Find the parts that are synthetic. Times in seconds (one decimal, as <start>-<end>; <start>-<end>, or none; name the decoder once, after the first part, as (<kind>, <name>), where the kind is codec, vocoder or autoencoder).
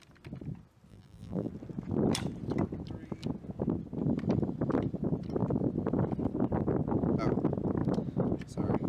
0.9-1.5 (vocoder, BigVGAN v2)